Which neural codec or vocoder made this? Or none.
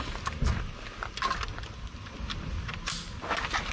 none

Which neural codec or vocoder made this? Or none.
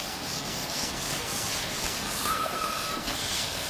codec, SNAC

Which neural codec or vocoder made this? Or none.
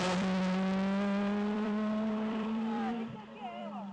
vocoder, BigVGAN v2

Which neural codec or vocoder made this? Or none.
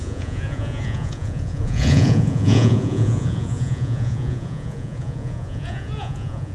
vocoder, Vocos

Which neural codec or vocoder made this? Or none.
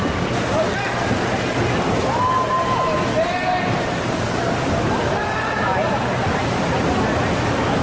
none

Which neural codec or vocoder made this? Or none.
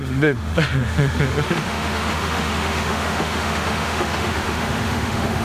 autoencoder, DAC-VAE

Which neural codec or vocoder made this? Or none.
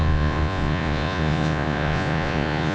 vocoder, Vocos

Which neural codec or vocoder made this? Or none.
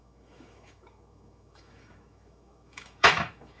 autoencoder, DAC-VAE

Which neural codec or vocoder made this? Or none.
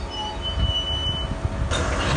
none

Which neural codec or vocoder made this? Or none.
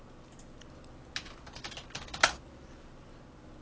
none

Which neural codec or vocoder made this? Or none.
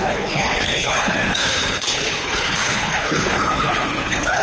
codec, HILCodec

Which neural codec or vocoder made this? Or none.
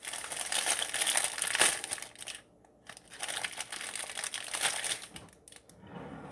none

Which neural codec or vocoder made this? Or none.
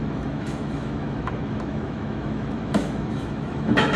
autoencoder, DAC-VAE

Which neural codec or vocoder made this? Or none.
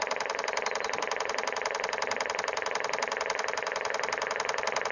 none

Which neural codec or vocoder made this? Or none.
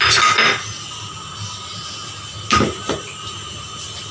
none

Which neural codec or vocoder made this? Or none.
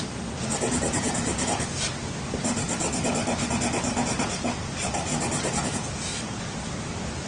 none